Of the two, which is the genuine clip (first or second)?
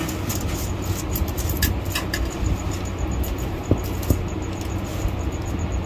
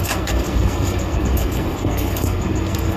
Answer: first